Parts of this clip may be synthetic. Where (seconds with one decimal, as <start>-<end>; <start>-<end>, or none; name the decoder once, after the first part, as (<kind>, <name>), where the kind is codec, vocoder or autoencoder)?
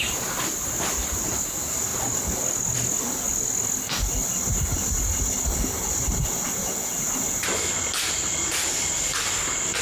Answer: none